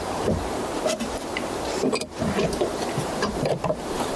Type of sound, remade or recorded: remade